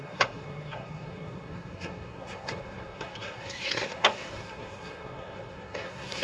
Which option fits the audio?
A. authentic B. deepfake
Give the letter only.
B